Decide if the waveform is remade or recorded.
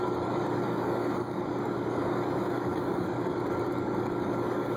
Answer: remade